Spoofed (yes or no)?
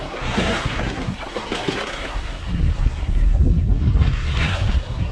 yes